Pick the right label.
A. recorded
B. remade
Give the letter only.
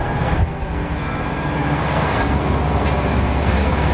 B